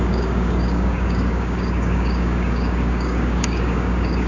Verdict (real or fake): fake